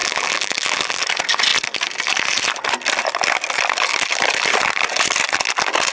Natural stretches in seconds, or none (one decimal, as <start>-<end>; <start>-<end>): 1.0-5.9